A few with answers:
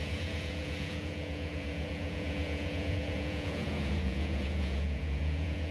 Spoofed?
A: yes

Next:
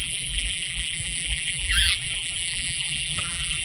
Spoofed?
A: yes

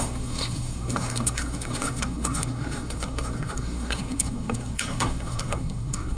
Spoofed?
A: yes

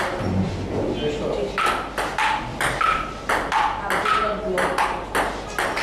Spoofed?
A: no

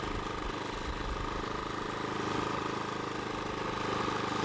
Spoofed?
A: no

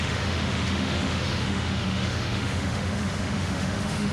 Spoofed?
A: yes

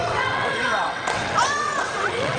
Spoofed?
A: yes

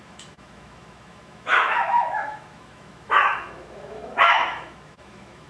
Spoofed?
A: yes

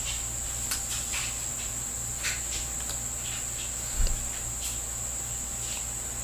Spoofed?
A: no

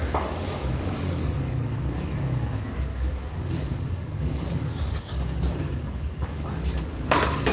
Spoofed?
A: yes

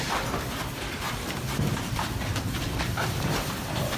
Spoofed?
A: yes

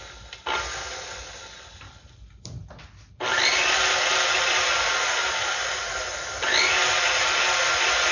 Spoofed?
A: no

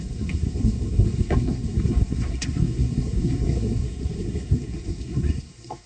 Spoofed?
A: yes